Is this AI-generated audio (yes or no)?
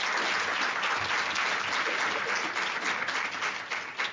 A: no